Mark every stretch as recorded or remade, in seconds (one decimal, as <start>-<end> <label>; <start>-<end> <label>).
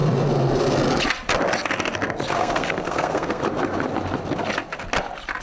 0.0-2.4 recorded; 2.4-3.4 remade; 3.4-5.4 recorded